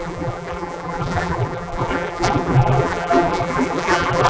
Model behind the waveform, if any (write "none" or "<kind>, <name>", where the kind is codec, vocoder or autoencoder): vocoder, BigVGAN v2